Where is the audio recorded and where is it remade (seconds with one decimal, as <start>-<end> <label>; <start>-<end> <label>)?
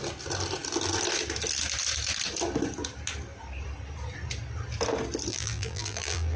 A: 0.0-5.3 recorded; 5.3-6.4 remade